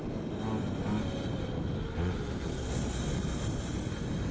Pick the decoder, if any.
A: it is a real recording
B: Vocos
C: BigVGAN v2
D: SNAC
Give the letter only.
A